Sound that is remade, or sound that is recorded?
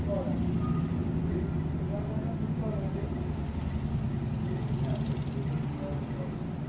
recorded